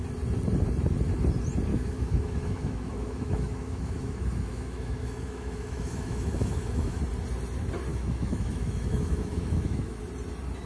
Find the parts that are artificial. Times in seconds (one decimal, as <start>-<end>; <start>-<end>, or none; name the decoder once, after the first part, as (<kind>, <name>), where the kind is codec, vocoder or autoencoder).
1.7-7.0 (autoencoder, DAC-VAE); 7.9-10.0